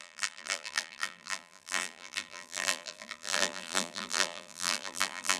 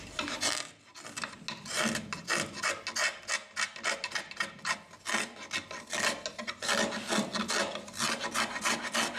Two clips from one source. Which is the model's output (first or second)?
first